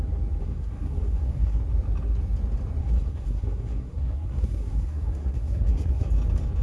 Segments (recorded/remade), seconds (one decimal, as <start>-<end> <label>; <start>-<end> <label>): 0.0-0.4 recorded; 0.4-1.6 remade; 1.6-2.8 recorded; 2.8-6.1 remade; 6.1-6.6 recorded